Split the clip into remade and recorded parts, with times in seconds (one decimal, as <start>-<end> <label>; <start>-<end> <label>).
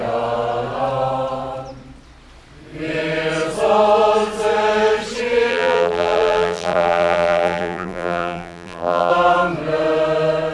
0.0-5.5 recorded; 5.5-9.1 remade; 9.1-10.5 recorded